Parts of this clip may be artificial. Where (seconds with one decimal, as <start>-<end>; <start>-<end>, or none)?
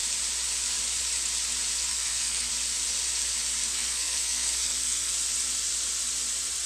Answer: 1.9-2.5; 3.7-5.1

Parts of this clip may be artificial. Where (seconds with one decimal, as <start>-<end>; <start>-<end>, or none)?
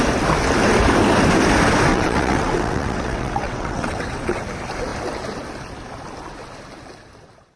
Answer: 1.9-4.4